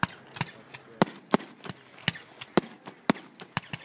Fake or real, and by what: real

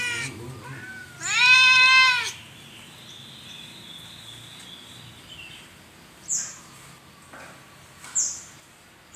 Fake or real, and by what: real